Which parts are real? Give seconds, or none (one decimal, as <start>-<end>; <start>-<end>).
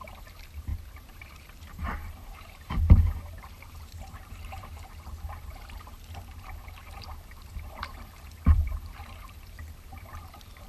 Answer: none